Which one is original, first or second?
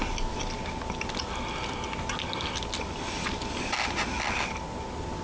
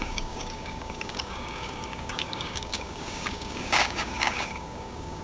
first